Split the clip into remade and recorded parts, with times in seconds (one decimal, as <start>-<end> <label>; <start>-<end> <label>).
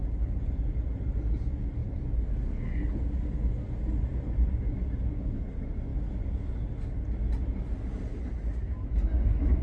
0.0-9.6 recorded